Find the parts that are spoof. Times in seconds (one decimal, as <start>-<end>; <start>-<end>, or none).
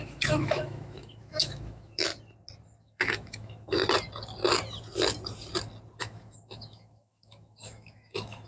0.0-2.1; 2.8-3.8; 6.0-8.5